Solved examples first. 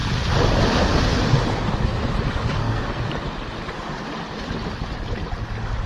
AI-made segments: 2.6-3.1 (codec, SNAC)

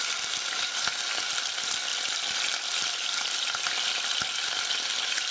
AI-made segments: none

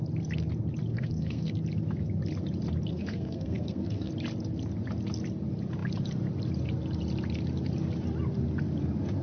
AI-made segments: 0.9-1.5 (codec, SNAC); 2.9-4.1

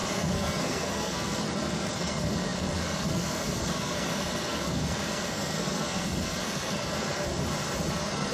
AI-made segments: 0.0-7.3 (codec, SNAC); 7.9-8.3

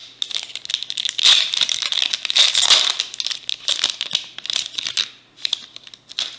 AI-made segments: none

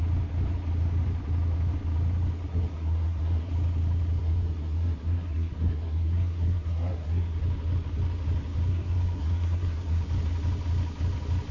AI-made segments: 2.5-3.5 (codec, SNAC); 4.2-7.4; 8.7-10.0